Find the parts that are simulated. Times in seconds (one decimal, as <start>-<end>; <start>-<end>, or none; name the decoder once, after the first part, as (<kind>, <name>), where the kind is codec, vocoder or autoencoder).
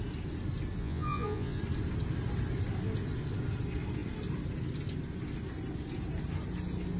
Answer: 0.8-1.6 (vocoder, Vocos)